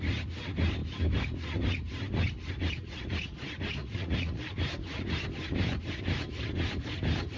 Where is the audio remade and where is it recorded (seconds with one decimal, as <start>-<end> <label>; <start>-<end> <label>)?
0.0-3.8 recorded; 3.8-4.4 remade; 4.4-7.4 recorded